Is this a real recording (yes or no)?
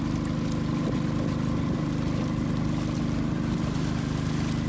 yes